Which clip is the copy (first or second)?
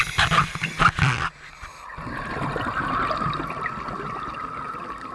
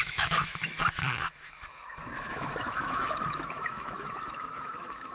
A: second